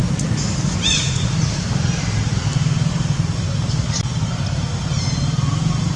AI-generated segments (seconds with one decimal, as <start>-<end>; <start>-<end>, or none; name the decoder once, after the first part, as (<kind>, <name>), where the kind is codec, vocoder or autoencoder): 0.9-2.3 (vocoder, BigVGAN v2)